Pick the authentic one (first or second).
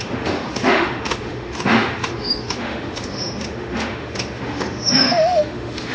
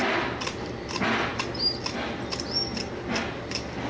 second